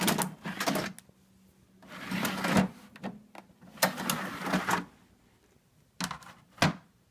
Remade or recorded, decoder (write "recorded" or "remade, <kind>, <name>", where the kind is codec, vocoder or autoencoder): recorded